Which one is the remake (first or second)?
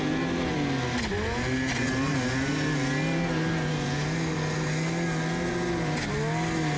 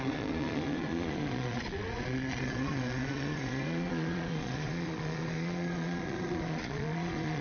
second